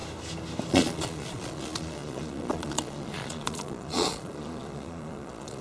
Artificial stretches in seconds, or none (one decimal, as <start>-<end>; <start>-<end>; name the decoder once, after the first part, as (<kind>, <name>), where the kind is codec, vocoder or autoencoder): 0.7-5.6 (vocoder, Vocos)